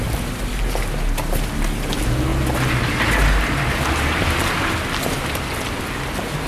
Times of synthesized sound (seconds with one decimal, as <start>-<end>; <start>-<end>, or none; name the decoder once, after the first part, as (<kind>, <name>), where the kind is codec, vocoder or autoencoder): none

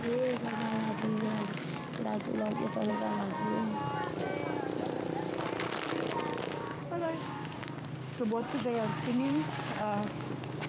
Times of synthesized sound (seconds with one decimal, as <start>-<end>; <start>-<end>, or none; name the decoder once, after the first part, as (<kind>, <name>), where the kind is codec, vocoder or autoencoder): 0.0-1.7 (codec, DAC); 2.9-3.4; 6.4-10.7

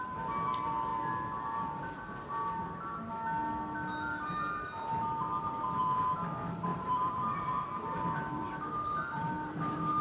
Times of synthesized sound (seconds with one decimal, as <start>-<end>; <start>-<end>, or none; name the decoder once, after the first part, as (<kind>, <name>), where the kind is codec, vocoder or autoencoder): 6.7-10.0 (vocoder, BigVGAN v2)

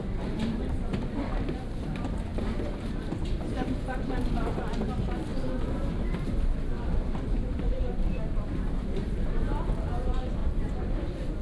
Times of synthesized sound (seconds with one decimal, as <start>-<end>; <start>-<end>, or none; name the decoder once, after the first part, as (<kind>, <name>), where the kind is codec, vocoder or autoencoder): 0.0-11.4 (vocoder, BigVGAN v2)

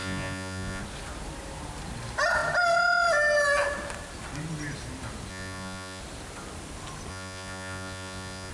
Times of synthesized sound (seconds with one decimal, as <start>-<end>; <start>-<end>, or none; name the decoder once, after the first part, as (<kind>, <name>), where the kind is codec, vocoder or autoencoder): 0.0-0.8 (vocoder, Vocos); 5.3-6.0; 7.1-8.5

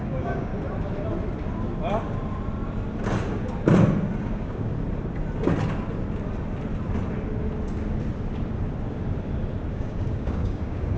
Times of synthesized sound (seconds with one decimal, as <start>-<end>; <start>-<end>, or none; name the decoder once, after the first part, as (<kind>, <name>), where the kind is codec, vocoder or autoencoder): 0.0-0.5 (codec, DAC); 4.3-4.7; 9.7-11.0

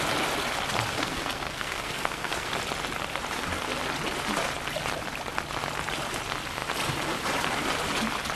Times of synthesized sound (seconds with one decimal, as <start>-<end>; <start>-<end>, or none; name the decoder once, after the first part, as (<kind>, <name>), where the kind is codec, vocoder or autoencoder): 0.9-2.5 (codec, SNAC)

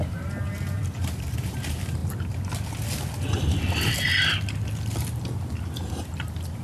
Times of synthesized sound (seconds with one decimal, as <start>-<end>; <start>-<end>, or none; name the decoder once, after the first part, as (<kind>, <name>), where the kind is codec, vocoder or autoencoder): 0.0-2.0 (vocoder, BigVGAN v2); 6.0-6.6